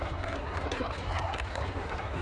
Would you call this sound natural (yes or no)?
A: no